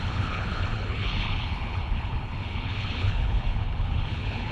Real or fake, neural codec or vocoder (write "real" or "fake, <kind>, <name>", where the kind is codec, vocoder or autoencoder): fake, codec, HILCodec